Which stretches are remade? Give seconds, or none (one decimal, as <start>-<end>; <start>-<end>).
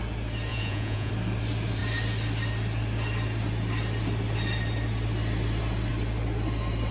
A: 0.5-1.1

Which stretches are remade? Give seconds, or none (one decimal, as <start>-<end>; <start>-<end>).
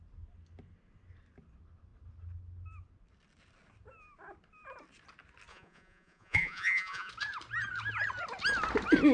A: 5.5-7.1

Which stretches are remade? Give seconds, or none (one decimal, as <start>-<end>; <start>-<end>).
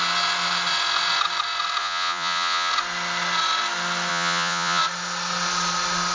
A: 1.8-2.7; 4.1-4.8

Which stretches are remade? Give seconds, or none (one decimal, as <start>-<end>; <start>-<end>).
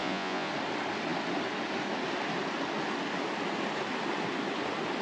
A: 0.0-0.5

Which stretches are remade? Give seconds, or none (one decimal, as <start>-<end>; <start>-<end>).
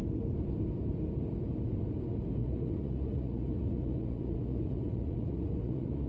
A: 2.4-6.1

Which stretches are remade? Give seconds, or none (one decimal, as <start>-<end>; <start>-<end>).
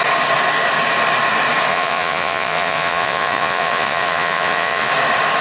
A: 1.7-4.9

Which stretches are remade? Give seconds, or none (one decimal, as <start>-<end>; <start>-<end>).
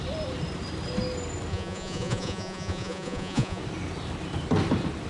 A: 1.5-3.6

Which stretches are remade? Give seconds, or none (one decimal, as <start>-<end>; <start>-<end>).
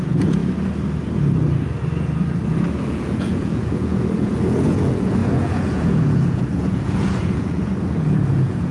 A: 0.0-0.4; 2.8-8.7